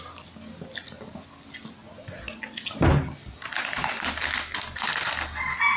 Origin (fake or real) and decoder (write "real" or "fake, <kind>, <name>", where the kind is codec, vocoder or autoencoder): real